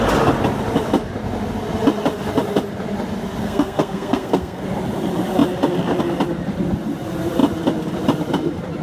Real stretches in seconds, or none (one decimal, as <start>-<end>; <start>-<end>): 0.0-3.4; 4.6-8.8